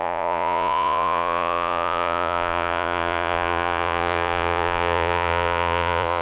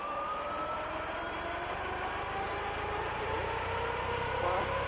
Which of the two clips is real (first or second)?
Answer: second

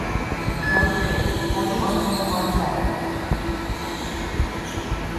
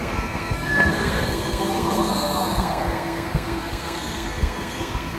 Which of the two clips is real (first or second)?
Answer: first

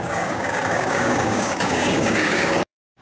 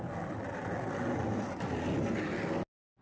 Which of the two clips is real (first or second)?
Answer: second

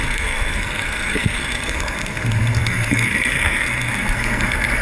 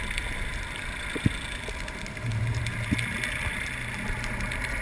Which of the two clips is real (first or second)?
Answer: second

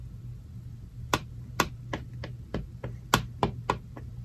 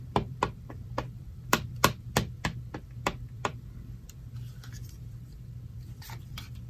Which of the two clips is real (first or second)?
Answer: first